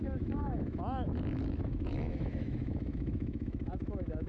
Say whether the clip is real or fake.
fake